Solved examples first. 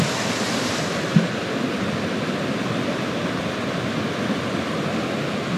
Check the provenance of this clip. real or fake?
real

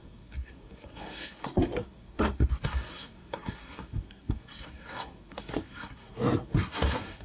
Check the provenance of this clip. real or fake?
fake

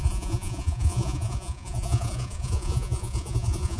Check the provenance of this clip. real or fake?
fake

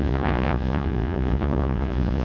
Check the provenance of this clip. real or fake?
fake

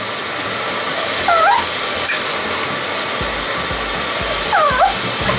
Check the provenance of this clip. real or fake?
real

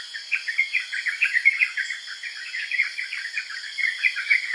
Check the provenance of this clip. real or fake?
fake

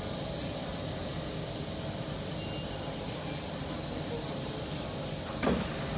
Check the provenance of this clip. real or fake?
real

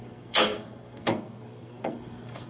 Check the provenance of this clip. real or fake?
fake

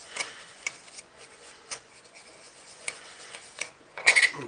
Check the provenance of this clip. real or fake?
fake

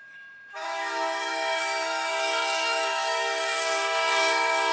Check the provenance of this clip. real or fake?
fake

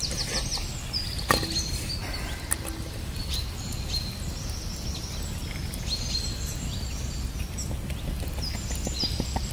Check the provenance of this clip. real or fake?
real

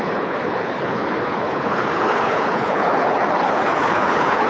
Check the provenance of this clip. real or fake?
fake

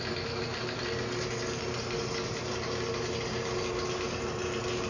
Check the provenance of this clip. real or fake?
real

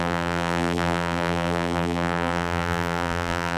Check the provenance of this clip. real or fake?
fake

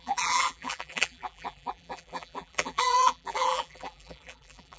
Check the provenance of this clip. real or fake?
fake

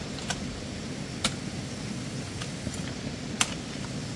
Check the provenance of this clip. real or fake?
real